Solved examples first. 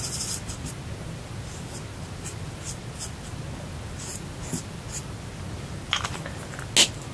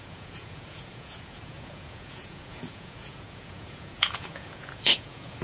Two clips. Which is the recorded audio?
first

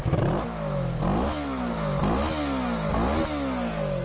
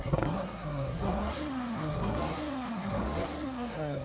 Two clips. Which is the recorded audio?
first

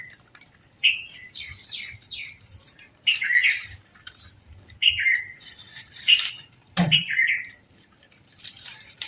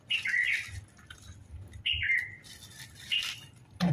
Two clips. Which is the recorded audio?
second